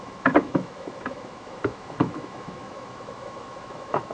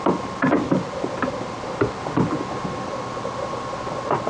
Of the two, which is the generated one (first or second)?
first